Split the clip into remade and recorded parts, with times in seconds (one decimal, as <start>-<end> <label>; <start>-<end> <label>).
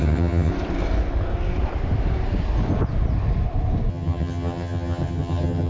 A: 0.0-0.5 remade; 0.5-3.9 recorded; 3.9-5.7 remade